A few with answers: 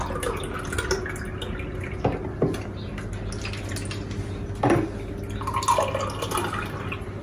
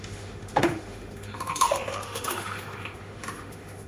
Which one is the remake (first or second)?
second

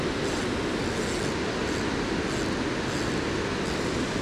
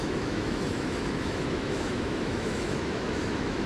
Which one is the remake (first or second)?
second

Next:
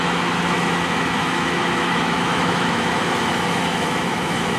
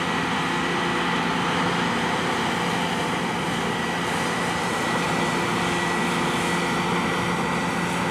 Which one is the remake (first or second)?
first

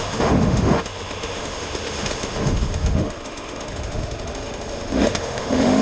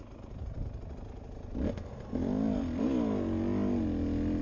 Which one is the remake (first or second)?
first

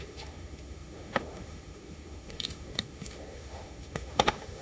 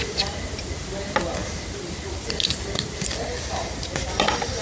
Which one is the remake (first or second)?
first